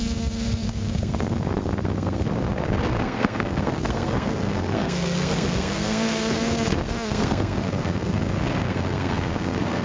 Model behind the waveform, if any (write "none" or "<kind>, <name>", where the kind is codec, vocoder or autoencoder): codec, SNAC